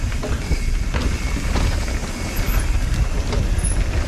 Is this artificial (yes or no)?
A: no